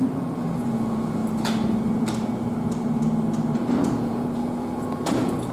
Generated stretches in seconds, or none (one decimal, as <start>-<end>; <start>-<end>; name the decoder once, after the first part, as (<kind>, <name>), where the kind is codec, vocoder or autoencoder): 0.0-1.2 (vocoder, Vocos); 3.8-5.5